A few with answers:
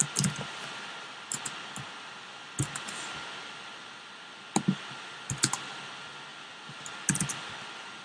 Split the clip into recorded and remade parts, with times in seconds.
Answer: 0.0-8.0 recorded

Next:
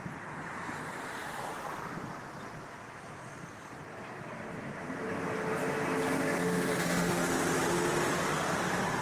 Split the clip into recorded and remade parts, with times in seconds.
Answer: 0.0-6.4 recorded; 6.4-7.3 remade; 7.3-9.0 recorded